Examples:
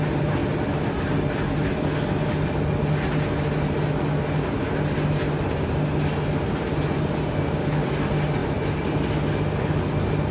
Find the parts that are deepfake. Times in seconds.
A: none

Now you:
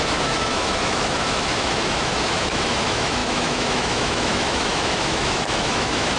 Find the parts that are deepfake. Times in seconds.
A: 0.0-6.2 (autoencoder, DAC-VAE)

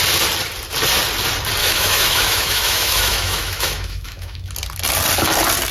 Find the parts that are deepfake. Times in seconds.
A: 1.6-4.5 (autoencoder, DAC-VAE)